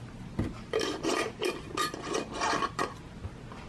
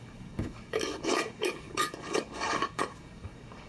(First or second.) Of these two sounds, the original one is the first